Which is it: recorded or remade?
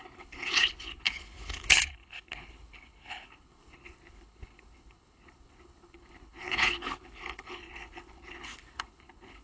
remade